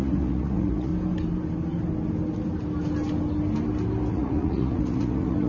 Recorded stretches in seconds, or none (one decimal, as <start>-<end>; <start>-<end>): 0.9-4.1